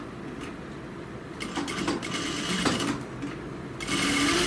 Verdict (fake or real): real